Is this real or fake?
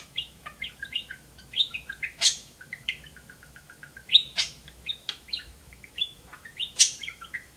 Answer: fake